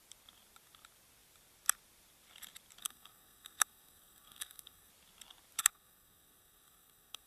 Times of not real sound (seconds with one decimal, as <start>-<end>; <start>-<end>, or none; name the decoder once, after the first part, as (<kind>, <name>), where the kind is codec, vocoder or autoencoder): 2.8-4.9 (codec, SNAC); 5.6-7.3